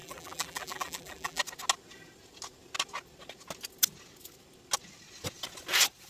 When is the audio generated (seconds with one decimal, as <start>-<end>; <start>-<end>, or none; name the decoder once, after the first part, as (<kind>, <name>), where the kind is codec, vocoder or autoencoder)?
0.0-1.4 (vocoder, BigVGAN v2)